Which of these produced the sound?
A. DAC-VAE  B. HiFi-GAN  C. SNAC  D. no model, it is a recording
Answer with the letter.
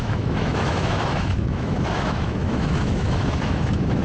A